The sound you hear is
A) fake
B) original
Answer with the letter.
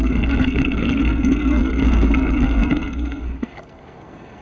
A